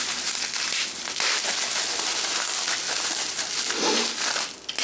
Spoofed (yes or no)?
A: no